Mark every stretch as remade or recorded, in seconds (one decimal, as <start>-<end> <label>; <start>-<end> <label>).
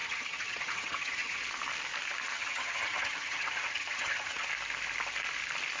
0.0-1.4 remade; 1.4-2.3 recorded; 2.3-4.5 remade; 4.5-5.8 recorded